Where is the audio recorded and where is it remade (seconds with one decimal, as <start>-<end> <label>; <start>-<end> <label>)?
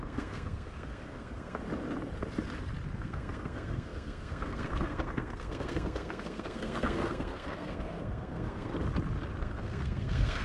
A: 0.0-1.6 remade; 1.6-3.0 recorded; 3.0-8.7 remade; 8.7-9.4 recorded; 9.4-10.4 remade